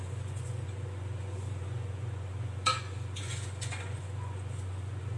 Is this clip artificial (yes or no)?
yes